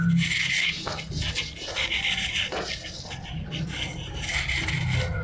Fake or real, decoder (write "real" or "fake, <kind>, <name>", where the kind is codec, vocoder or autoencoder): real